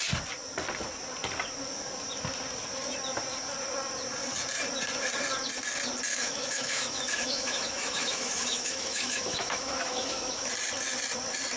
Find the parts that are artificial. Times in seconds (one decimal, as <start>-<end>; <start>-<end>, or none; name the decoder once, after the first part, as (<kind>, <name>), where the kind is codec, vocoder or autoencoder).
6.1-10.5 (autoencoder, DAC-VAE)

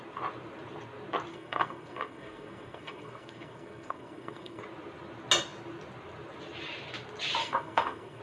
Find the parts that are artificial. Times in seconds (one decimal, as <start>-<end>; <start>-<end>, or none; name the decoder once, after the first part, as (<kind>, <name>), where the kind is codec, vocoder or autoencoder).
1.3-4.6 (codec, SNAC); 7.4-8.2

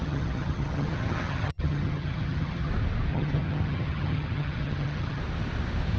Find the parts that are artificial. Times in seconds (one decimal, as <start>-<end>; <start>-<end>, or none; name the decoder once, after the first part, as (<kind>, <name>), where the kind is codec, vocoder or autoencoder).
0.0-2.7 (vocoder, HiFi-GAN); 3.1-5.2

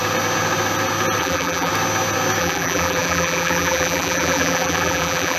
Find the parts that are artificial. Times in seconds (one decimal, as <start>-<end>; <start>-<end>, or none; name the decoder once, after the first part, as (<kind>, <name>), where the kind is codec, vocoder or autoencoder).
1.2-1.7 (vocoder, BigVGAN v2); 2.4-5.4

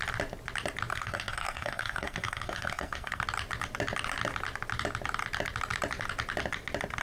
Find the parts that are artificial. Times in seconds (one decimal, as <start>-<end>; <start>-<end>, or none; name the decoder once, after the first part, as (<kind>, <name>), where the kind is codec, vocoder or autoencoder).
0.9-3.2 (codec, SNAC)